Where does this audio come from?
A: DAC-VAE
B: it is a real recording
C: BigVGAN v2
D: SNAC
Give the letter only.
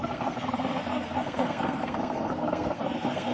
D